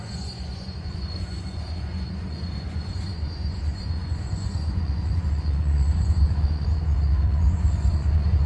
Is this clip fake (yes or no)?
yes